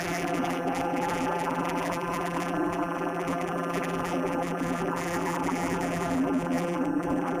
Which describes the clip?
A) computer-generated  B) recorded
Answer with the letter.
A